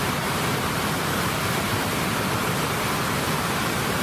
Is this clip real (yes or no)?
no